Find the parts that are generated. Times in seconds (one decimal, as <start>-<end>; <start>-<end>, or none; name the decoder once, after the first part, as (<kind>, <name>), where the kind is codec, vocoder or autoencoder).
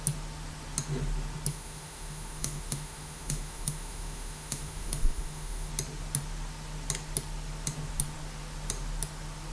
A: 1.5-5.7 (autoencoder, DAC-VAE)